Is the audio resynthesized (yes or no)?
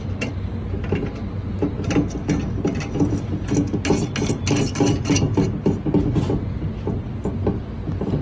no